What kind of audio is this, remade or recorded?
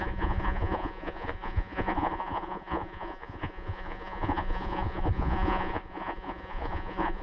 remade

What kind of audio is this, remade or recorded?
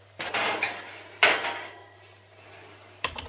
remade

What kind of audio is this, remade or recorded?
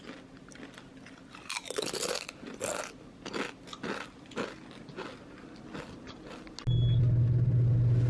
recorded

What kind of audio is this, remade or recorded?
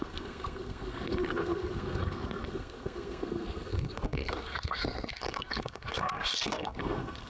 remade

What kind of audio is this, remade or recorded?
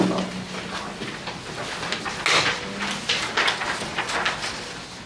recorded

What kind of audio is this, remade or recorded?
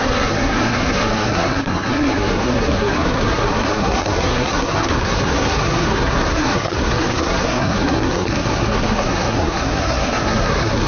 remade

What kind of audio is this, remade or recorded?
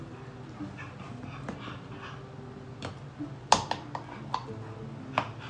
recorded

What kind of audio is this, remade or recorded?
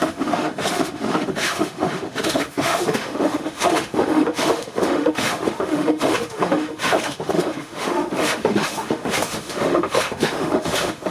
remade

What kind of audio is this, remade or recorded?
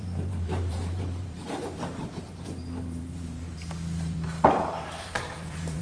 remade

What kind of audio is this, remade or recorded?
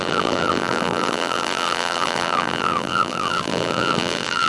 remade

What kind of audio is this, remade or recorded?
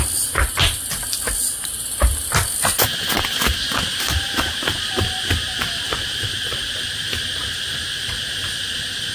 recorded